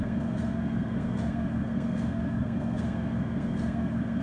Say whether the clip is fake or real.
fake